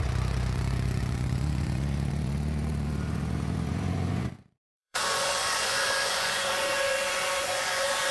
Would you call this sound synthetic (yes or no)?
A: yes